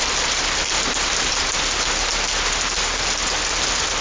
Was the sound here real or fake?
real